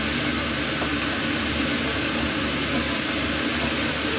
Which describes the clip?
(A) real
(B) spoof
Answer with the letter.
A